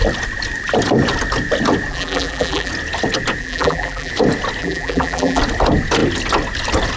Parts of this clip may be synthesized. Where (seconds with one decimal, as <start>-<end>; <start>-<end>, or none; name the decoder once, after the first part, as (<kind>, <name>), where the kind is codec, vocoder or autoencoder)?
1.9-2.7 (vocoder, BigVGAN v2); 3.4-4.1; 4.6-5.4